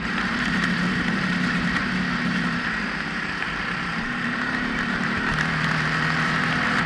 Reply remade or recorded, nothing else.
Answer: remade